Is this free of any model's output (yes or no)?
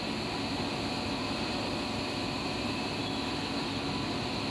yes